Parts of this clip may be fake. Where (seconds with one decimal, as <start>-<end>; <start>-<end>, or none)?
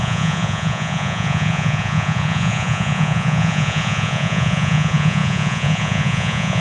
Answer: 0.0-6.6